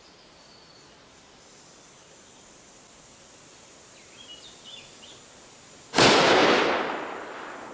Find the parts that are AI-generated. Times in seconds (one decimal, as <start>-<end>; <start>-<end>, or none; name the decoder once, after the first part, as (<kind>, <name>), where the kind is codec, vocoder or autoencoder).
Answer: none